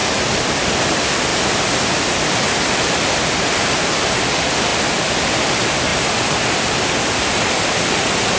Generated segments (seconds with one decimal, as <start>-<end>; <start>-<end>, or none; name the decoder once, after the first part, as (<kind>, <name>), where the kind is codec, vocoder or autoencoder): 0.0-4.7 (vocoder, BigVGAN v2); 5.4-8.4